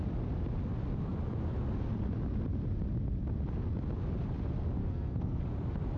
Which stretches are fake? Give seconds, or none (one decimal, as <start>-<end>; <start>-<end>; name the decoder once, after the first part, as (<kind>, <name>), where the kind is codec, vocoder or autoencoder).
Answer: 4.8-5.4 (codec, SNAC)